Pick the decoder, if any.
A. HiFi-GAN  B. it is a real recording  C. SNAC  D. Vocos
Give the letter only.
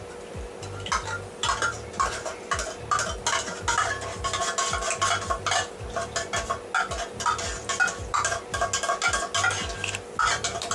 B